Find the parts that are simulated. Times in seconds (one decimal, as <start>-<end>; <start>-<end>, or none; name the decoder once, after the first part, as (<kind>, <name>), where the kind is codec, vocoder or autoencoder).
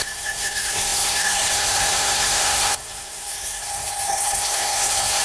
0.0-5.2 (codec, SNAC)